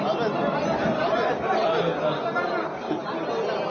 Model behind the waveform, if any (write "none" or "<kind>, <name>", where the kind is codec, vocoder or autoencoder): none